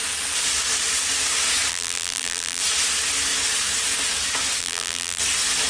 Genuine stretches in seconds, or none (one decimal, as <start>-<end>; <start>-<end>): 0.0-1.7; 2.6-4.6; 5.2-5.7